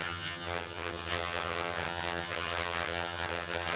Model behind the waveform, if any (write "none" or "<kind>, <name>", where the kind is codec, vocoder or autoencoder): vocoder, HiFi-GAN